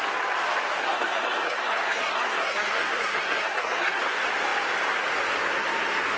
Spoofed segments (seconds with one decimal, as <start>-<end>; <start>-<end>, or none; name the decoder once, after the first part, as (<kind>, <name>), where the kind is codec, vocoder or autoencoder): 0.8-4.0 (codec, SNAC)